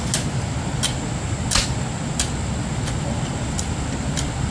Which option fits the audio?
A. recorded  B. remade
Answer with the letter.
A